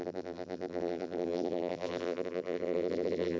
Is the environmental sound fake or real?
fake